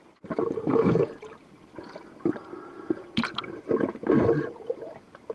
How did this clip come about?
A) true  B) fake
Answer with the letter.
A